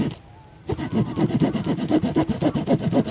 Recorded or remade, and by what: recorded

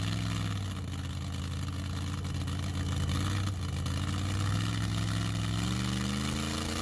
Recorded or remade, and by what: recorded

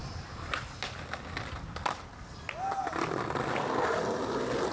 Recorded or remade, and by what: recorded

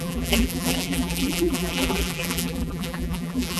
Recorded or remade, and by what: remade, vocoder, BigVGAN v2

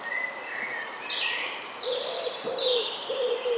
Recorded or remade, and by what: remade, vocoder, BigVGAN v2